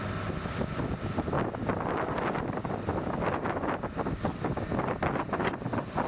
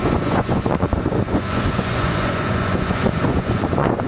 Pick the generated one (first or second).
second